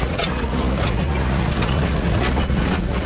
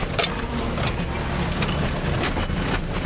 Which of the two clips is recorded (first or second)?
second